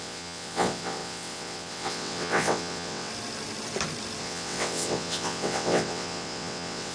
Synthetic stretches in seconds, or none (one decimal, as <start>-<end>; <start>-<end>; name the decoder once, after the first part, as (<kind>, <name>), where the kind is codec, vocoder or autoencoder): 0.0-3.1 (vocoder, WaveNeXt); 4.2-6.9